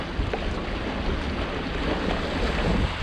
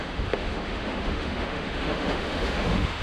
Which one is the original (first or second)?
first